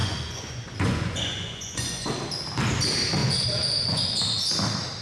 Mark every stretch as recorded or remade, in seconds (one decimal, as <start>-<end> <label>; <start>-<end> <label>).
0.0-2.1 remade; 2.1-3.2 recorded; 3.2-4.2 remade; 4.2-5.0 recorded